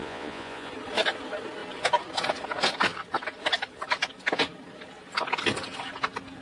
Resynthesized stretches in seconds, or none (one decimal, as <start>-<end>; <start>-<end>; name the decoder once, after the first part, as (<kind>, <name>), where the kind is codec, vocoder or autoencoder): 0.0-0.7 (vocoder, Vocos)